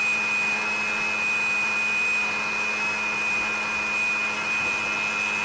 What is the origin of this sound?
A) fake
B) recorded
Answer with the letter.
B